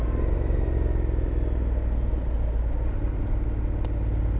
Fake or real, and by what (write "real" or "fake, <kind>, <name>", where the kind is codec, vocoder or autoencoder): real